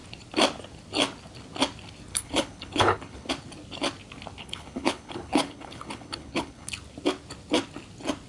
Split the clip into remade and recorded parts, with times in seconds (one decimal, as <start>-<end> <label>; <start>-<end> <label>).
0.0-2.1 recorded; 2.1-3.3 remade; 3.3-4.4 recorded; 4.4-6.7 remade; 6.7-8.3 recorded